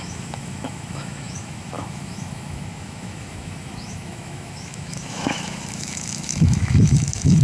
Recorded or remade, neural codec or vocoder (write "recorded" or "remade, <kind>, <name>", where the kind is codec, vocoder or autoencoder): remade, autoencoder, DAC-VAE